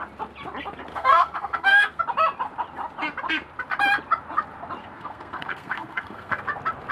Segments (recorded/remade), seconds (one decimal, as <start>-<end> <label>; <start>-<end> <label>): 0.0-0.9 recorded; 0.9-2.0 remade; 2.0-4.8 recorded; 4.8-6.4 remade; 6.4-6.9 recorded